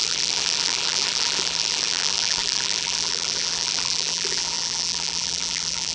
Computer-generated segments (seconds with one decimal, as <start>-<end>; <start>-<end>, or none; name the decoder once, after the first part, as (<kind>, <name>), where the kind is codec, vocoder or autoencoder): 0.0-5.9 (vocoder, BigVGAN v2)